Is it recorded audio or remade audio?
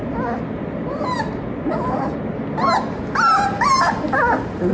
recorded